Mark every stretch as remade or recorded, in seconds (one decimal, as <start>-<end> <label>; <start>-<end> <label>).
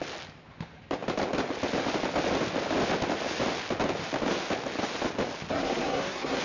0.0-5.5 recorded; 5.5-6.4 remade